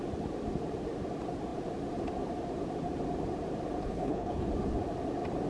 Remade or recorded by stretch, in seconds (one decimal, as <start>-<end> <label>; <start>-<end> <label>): 0.0-3.8 recorded; 3.8-4.5 remade; 4.5-5.5 recorded